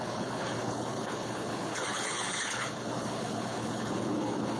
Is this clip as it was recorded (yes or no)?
no